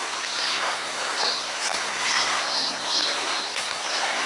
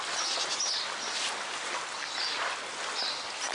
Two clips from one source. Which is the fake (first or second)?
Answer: first